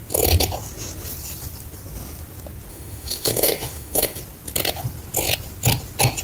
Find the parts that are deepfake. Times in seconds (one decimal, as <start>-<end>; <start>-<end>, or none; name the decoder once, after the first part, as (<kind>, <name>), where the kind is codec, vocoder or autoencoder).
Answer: 2.7-4.2 (autoencoder, DAC-VAE)